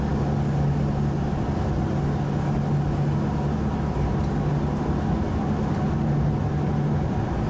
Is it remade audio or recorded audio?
recorded